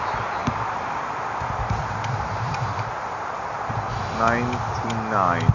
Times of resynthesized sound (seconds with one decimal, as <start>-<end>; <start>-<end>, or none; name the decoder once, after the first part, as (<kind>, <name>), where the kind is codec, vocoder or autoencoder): 0.4-3.7 (vocoder, BigVGAN v2)